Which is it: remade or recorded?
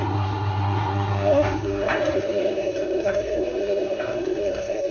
remade